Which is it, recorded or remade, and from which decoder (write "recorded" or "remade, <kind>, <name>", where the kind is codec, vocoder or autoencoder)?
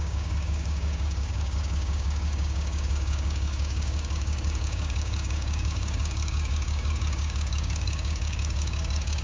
remade, codec, DAC